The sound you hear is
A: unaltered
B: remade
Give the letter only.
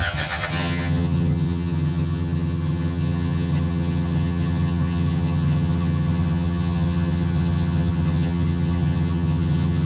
B